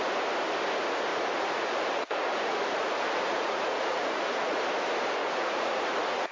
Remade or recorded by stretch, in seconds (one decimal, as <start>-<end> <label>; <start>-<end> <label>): 0.0-1.1 recorded; 1.1-4.6 remade; 4.6-5.2 recorded; 5.2-6.3 remade